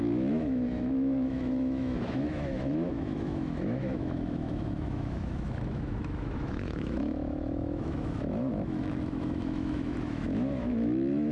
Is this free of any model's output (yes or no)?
no